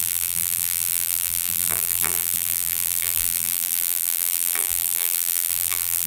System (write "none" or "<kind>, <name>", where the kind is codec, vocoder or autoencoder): vocoder, BigVGAN v2